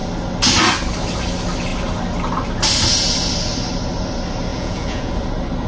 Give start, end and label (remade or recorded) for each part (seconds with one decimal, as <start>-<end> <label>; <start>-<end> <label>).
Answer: 0.0-4.5 recorded; 4.5-5.1 remade; 5.1-5.7 recorded